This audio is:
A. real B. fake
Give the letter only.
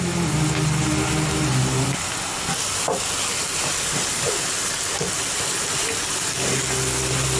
A